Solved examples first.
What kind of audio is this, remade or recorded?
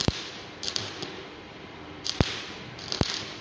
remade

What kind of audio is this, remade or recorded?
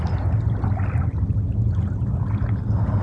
recorded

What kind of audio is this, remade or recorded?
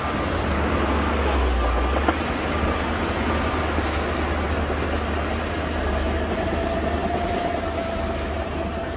recorded